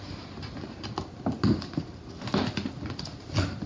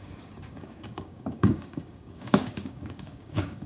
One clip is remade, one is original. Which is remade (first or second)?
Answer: second